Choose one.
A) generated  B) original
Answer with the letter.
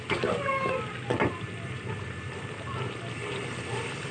B